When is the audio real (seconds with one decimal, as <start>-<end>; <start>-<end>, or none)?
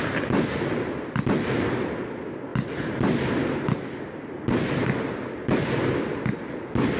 0.0-7.0